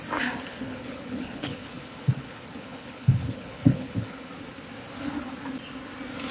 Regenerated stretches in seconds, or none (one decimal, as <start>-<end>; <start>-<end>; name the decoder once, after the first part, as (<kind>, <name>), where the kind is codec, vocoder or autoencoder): 0.5-4.3 (codec, HILCodec)